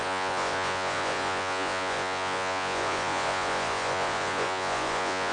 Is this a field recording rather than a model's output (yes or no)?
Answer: no